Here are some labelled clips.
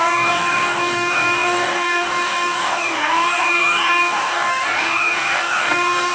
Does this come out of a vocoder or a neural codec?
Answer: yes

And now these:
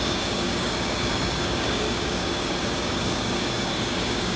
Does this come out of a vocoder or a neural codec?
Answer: yes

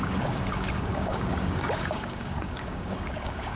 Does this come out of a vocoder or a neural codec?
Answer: yes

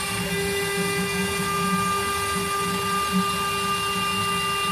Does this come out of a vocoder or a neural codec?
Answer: no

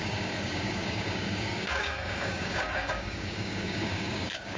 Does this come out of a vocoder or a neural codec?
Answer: yes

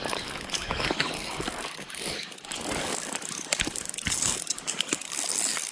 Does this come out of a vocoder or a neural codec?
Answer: yes